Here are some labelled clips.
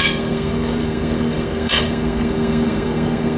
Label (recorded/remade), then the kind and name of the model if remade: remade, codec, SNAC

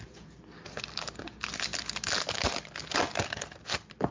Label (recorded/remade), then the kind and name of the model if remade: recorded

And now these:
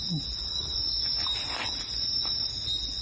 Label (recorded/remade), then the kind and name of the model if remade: recorded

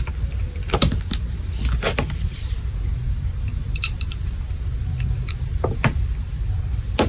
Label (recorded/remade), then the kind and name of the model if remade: remade, vocoder, BigVGAN v2